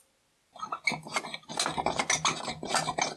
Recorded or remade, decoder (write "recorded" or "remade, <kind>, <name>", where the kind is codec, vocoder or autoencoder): recorded